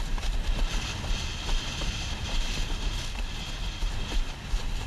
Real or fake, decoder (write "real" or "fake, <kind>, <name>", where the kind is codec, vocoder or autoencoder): real